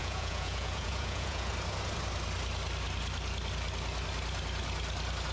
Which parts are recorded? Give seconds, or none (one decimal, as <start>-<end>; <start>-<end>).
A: 1.5-5.3